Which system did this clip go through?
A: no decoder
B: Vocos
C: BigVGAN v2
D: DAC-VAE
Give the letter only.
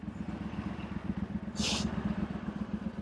A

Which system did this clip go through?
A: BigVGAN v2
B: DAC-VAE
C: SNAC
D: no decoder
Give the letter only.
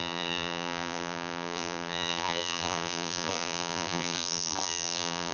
A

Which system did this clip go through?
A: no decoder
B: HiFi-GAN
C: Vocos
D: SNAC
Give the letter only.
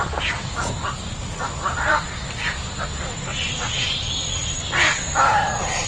A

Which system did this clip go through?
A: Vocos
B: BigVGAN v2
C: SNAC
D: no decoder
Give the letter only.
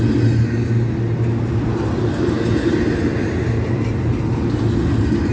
D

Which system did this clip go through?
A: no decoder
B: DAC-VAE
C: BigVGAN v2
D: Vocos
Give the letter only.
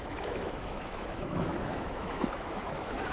B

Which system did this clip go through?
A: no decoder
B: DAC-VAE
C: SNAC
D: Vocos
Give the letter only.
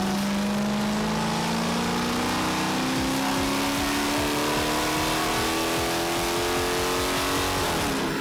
A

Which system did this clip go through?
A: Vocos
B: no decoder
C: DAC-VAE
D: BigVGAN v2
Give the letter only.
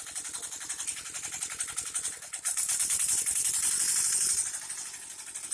B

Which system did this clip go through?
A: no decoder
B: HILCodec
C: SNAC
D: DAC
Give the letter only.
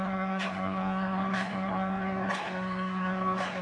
C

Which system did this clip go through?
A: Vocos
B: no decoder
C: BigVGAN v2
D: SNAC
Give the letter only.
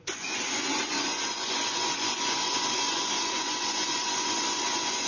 A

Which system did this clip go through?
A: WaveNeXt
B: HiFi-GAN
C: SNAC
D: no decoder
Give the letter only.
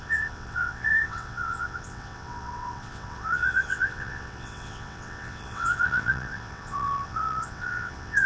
A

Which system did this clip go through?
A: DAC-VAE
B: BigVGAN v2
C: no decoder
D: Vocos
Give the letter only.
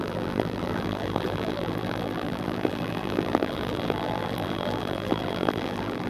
B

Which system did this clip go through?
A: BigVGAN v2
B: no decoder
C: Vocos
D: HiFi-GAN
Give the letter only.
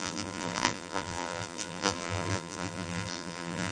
A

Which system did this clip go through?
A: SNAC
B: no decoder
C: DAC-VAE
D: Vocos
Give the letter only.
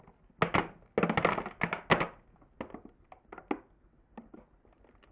B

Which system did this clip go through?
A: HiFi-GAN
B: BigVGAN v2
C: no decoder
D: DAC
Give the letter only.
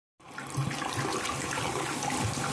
C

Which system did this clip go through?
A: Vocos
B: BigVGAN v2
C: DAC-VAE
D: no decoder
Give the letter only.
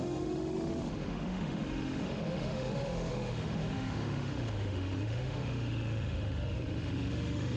C